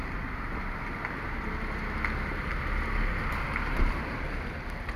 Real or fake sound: fake